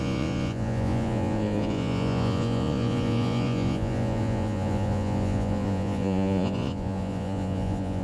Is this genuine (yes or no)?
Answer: no